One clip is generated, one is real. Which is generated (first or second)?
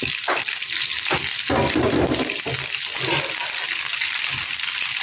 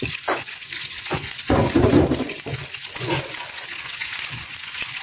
second